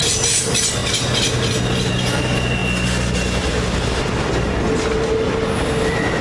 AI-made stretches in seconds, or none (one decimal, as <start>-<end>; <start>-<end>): none